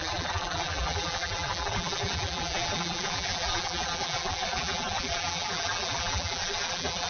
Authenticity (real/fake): fake